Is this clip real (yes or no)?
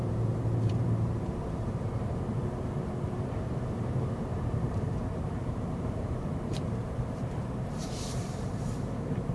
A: no